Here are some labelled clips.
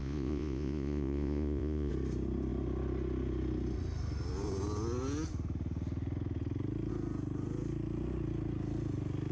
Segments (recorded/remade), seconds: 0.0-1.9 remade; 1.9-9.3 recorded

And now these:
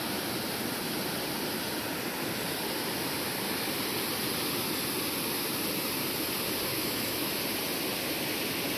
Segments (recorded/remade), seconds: 0.0-6.7 recorded; 6.7-7.3 remade; 7.3-8.8 recorded

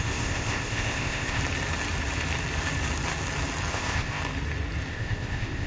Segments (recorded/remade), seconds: 0.0-1.4 remade; 1.4-3.7 recorded; 3.7-4.2 remade; 4.2-4.9 recorded; 4.9-5.7 remade

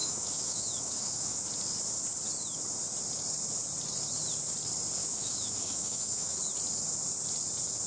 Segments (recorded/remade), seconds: 0.0-1.4 remade; 1.4-5.0 recorded; 5.0-6.4 remade; 6.4-7.9 recorded

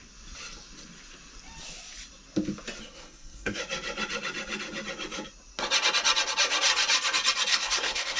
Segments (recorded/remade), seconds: 0.0-2.8 recorded; 2.8-3.6 remade; 3.6-7.5 recorded; 7.5-8.2 remade

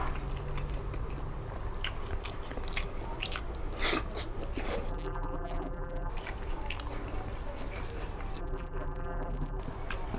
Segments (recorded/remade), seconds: 0.0-4.9 recorded; 4.9-6.1 remade; 6.1-8.4 recorded; 8.4-9.6 remade; 9.6-10.2 recorded

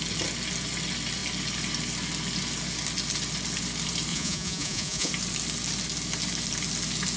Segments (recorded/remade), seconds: 0.0-4.1 recorded; 4.1-5.1 remade; 5.1-7.2 recorded